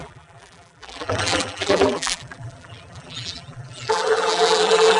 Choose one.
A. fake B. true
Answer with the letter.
A